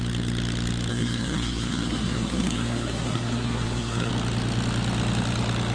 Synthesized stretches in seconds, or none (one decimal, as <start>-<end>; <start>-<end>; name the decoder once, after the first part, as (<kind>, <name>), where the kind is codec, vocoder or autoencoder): 0.9-4.1 (codec, SNAC)

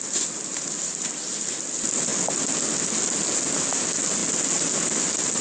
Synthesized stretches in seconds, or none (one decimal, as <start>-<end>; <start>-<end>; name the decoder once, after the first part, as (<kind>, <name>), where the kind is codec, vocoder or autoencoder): none

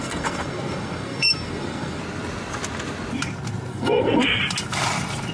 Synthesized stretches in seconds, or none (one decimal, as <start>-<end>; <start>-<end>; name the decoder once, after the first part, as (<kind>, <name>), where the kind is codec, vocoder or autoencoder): 0.0-2.0 (codec, SNAC); 3.7-4.4